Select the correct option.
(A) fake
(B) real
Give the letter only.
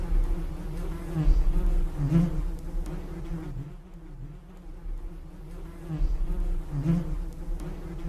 B